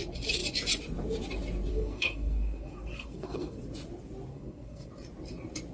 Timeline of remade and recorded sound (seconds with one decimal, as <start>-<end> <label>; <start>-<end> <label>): 0.0-1.7 recorded; 1.7-3.6 remade; 3.6-4.3 recorded; 4.3-4.9 remade; 4.9-5.7 recorded